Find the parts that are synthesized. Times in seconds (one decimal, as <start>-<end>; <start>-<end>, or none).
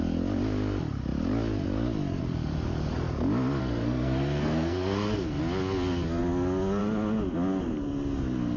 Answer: 3.6-5.4